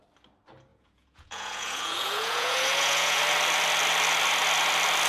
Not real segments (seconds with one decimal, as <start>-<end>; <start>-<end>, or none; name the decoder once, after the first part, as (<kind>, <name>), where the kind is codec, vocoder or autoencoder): 0.7-3.2 (vocoder, Vocos)